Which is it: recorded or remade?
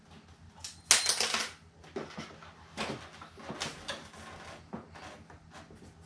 recorded